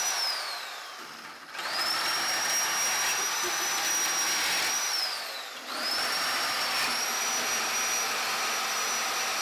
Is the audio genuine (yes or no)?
yes